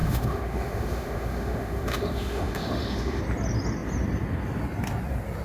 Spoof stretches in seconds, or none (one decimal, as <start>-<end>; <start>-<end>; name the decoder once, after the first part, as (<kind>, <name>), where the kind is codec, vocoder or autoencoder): 0.0-3.2 (autoencoder, DAC-VAE)

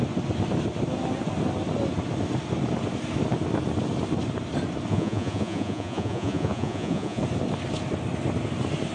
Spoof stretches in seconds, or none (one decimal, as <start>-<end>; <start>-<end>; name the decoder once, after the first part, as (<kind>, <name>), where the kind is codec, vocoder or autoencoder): 4.9-7.2 (vocoder, Vocos)

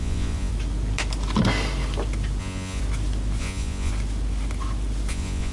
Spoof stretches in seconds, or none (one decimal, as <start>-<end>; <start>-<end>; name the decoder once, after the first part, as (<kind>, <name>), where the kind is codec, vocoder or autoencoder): 0.0-0.5 (vocoder, Vocos); 2.4-2.8; 3.4-3.9; 5.1-5.5

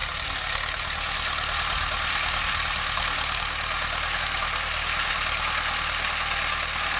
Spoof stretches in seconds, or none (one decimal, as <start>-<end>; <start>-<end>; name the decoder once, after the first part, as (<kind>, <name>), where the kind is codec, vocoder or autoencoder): none

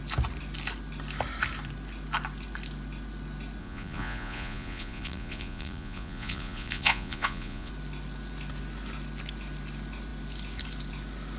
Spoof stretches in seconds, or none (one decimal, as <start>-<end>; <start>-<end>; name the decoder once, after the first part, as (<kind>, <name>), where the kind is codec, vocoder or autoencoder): 3.6-7.7 (vocoder, Vocos)

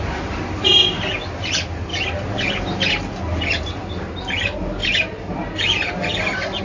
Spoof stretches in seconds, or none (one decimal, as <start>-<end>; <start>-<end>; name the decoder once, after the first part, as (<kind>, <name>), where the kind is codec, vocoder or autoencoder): none

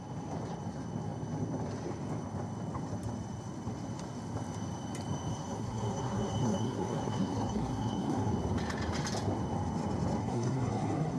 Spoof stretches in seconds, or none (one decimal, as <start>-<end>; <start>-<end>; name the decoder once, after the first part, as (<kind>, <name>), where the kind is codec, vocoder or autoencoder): 5.3-8.3 (codec, SNAC); 10.2-11.2